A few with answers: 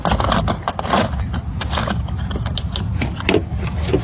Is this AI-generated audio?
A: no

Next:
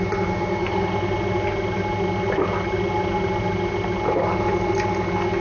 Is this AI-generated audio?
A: no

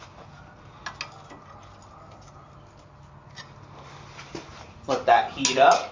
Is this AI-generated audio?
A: no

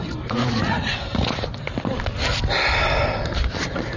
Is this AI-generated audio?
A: no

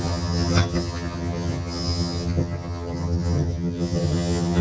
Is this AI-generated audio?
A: yes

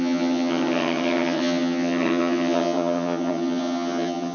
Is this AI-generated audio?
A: yes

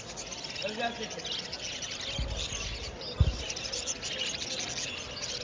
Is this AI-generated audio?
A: no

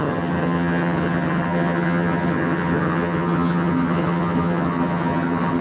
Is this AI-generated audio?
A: yes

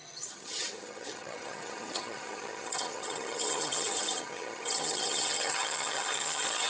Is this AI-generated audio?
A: yes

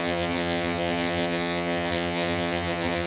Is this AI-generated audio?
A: yes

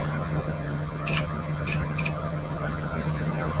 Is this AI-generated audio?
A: yes